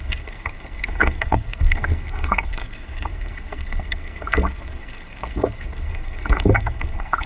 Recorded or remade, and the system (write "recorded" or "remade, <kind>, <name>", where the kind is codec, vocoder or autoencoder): remade, codec, SNAC